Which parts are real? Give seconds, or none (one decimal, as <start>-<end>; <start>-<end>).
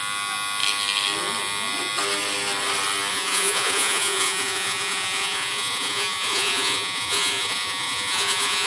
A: 0.0-3.1